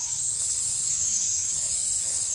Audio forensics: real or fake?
fake